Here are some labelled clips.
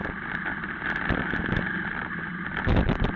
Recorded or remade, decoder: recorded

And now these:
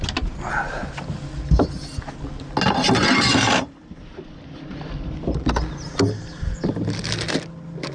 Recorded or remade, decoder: recorded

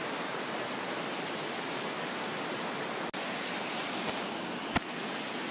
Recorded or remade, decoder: recorded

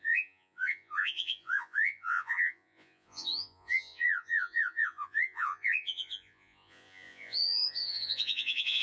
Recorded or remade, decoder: remade, vocoder, Vocos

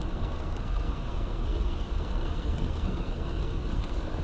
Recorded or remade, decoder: remade, codec, SNAC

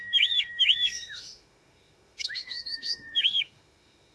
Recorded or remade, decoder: remade, autoencoder, DAC-VAE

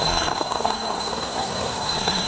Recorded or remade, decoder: remade, codec, SNAC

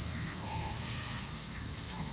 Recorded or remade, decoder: remade, codec, SNAC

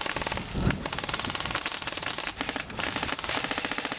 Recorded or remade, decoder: recorded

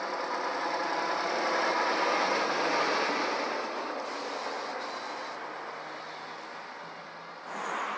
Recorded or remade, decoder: recorded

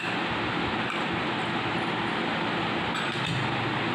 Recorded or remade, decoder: recorded